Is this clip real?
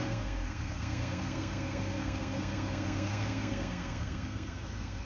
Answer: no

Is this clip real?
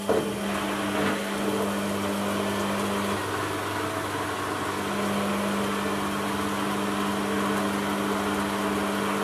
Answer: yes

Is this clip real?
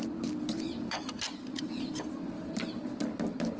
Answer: yes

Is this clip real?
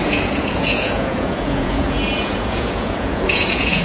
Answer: no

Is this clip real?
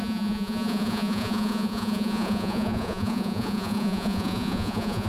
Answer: no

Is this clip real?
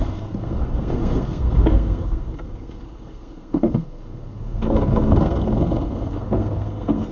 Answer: no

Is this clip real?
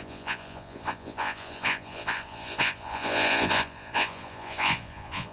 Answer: no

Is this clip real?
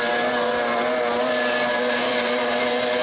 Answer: yes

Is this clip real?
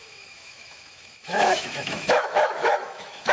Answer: no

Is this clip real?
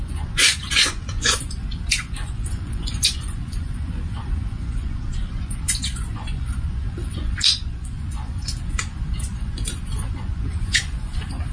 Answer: no